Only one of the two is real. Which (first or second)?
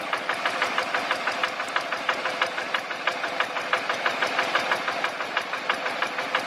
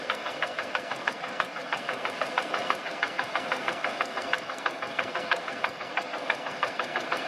first